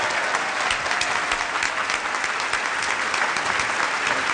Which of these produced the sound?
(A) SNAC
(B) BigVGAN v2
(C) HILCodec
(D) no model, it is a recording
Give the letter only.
D